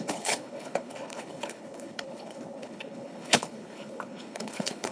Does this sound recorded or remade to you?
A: remade